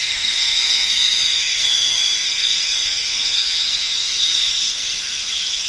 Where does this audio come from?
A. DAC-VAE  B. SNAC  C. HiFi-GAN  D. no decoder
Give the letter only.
B